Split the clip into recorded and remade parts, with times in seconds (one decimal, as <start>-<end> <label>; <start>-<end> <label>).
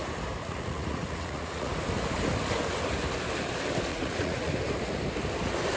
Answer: 0.0-0.4 recorded; 0.4-1.7 remade; 1.7-3.9 recorded; 3.9-4.5 remade; 4.5-5.8 recorded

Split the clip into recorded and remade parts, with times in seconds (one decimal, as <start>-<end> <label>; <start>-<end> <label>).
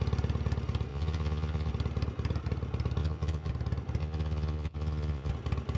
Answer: 0.0-0.9 recorded; 0.9-1.7 remade; 1.7-3.0 recorded; 3.0-3.5 remade; 3.5-4.0 recorded; 4.0-5.3 remade; 5.3-5.8 recorded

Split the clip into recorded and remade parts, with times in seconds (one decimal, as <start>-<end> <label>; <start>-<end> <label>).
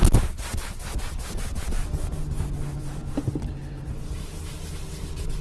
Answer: 0.0-5.4 recorded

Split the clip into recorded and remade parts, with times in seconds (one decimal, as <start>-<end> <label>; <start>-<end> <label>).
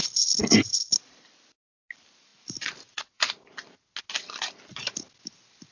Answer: 0.0-5.7 recorded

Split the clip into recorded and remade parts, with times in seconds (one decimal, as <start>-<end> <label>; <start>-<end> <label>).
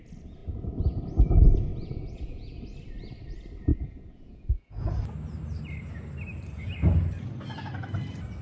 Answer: 0.0-0.4 recorded; 0.4-1.0 remade; 1.0-1.7 recorded; 1.7-2.6 remade; 2.6-3.7 recorded; 3.7-4.8 remade; 4.8-8.4 recorded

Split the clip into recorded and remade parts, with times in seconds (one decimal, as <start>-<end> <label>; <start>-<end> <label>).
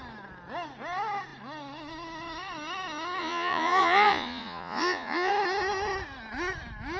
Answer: 0.0-3.2 recorded; 3.2-5.3 remade; 5.3-7.0 recorded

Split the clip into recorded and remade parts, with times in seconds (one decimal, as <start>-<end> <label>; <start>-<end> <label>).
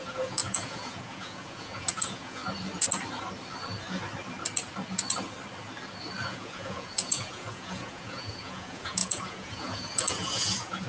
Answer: 0.0-2.4 remade; 2.4-6.2 recorded; 6.2-10.9 remade